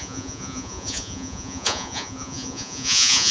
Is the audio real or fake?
fake